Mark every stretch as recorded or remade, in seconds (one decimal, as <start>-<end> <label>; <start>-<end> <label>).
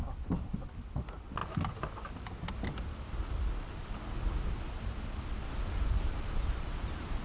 0.0-7.2 recorded